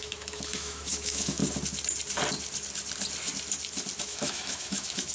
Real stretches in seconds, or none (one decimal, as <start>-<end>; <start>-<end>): 1.4-4.0